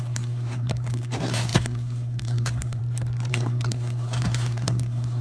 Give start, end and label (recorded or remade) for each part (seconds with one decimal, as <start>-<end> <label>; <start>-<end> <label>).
0.0-2.8 remade; 2.8-3.3 recorded; 3.3-5.2 remade